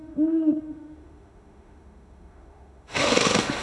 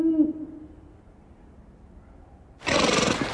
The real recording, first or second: second